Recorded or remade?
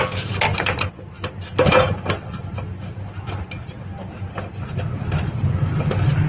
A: recorded